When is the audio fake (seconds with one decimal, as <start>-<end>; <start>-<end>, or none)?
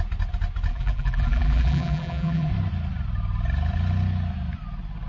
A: 0.7-2.5